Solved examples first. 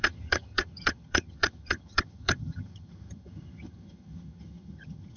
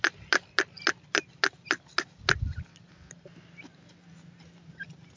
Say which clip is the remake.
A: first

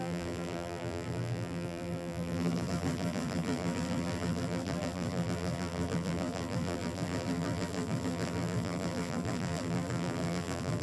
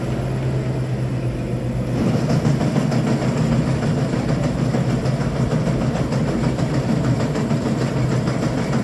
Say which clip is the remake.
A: first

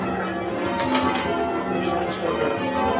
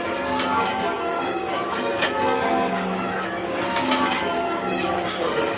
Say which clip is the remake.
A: second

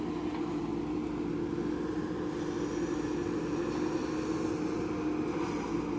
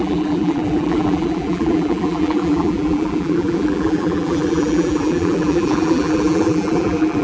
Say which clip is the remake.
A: second